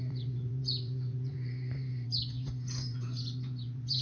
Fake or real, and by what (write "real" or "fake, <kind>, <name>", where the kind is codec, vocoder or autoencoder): fake, vocoder, Vocos